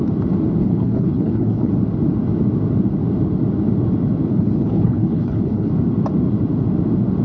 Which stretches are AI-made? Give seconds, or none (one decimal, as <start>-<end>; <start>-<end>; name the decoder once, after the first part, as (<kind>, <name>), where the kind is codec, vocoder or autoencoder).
0.6-1.7 (codec, HILCodec); 4.3-5.7